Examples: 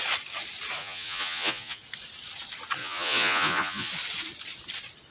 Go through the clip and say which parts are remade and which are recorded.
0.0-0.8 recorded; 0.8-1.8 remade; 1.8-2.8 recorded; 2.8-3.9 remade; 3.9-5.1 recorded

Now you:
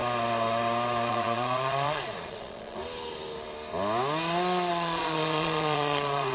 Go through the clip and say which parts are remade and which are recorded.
0.0-1.1 recorded; 1.1-2.8 remade; 2.8-4.7 recorded; 4.7-6.3 remade

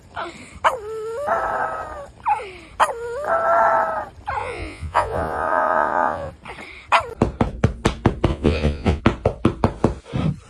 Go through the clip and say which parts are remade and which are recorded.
0.0-4.4 recorded; 4.4-6.3 remade; 6.3-8.3 recorded; 8.3-9.0 remade; 9.0-10.5 recorded

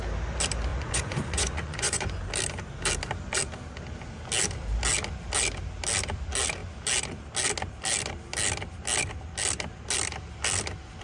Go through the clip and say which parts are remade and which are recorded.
0.0-0.7 recorded; 0.7-2.2 remade; 2.2-11.0 recorded

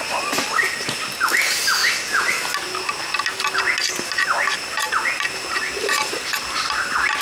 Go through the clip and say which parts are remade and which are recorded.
0.0-7.2 recorded

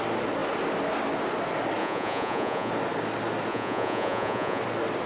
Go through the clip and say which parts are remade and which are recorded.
0.0-1.8 recorded; 1.8-2.7 remade; 2.7-3.5 recorded; 3.5-4.6 remade; 4.6-5.1 recorded

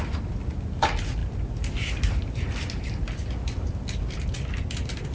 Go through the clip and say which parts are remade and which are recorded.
0.0-5.1 recorded

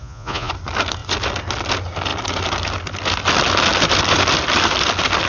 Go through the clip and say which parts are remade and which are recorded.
0.0-0.5 remade; 0.5-5.3 recorded